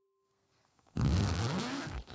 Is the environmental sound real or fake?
fake